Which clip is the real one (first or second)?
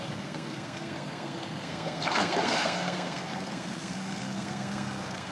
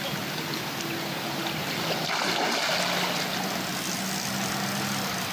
second